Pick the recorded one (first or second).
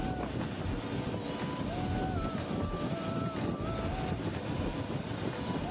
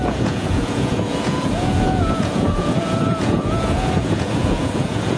first